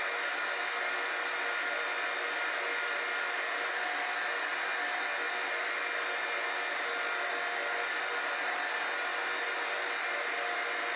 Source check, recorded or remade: recorded